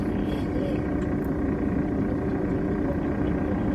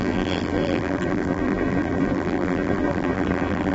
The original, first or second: first